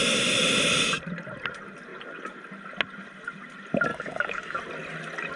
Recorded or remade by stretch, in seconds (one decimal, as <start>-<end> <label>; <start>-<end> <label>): 0.0-3.9 recorded; 3.9-4.6 remade; 4.6-5.4 recorded